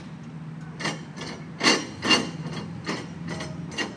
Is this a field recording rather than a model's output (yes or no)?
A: yes